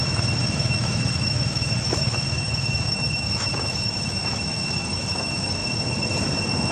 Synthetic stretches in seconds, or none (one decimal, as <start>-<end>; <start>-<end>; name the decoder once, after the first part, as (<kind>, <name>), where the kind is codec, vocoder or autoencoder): 0.0-5.6 (autoencoder, DAC-VAE)